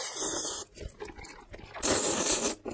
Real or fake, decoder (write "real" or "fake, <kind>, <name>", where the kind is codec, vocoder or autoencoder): real